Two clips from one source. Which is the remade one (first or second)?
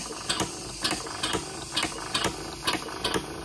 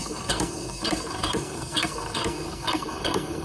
second